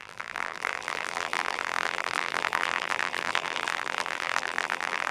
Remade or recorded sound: remade